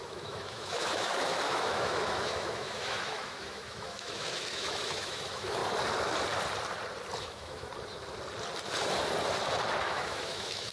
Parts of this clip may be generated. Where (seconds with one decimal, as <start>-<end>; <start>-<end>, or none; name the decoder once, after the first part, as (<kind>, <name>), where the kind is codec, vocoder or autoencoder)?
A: 0.0-5.6 (autoencoder, DAC-VAE); 7.2-7.7; 9.8-10.7